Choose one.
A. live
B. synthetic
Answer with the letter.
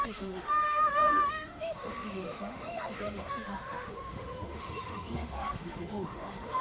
B